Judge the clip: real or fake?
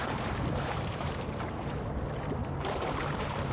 fake